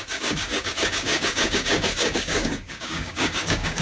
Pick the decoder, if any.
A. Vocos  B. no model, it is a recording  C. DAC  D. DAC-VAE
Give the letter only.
C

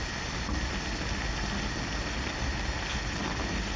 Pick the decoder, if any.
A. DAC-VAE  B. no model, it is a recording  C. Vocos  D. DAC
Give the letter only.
B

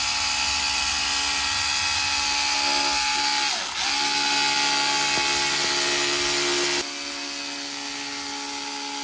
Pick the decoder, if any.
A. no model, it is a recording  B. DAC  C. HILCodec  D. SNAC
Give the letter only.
A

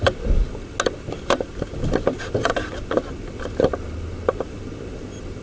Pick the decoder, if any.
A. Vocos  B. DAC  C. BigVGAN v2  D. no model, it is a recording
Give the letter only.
D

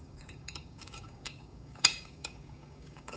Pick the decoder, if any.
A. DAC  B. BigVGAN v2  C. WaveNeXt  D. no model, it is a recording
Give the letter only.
A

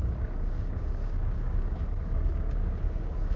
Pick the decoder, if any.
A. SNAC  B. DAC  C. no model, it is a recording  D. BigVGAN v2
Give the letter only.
B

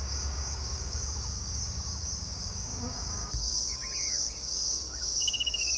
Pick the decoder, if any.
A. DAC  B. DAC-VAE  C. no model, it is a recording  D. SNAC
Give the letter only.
A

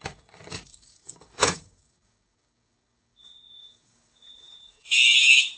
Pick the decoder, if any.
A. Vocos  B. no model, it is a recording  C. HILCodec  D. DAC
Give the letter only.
D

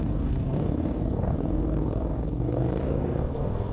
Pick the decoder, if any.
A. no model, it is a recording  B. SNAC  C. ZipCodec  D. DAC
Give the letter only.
D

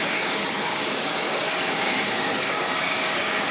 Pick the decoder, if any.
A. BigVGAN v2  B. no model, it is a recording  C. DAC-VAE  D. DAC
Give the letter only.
D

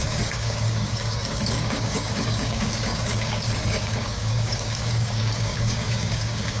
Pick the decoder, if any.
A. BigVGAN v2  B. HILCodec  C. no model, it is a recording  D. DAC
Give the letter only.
D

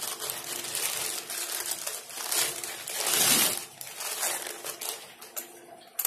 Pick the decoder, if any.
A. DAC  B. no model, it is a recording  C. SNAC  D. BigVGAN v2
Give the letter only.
B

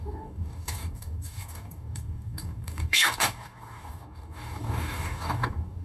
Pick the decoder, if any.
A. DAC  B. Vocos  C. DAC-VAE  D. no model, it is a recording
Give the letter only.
A